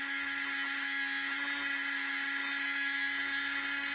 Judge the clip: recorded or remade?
recorded